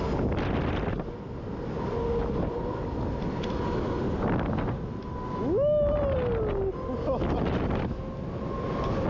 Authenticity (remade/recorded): recorded